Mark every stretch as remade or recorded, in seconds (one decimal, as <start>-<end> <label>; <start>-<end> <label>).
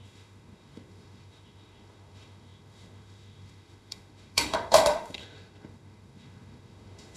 0.0-7.2 remade